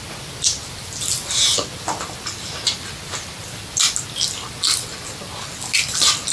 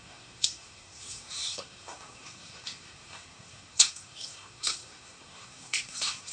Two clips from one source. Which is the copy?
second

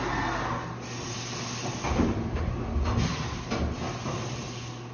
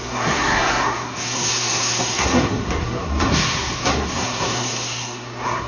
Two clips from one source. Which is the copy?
second